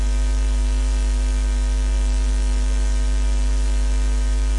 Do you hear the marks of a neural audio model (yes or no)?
yes